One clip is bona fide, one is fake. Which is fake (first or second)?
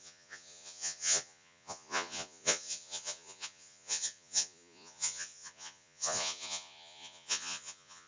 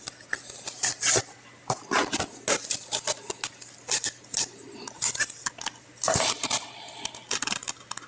first